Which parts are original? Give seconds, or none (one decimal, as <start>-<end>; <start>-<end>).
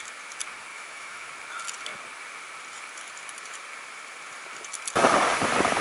0.0-0.7; 1.3-5.8